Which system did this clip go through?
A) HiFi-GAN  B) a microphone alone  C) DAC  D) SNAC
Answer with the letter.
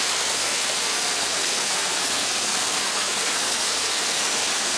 D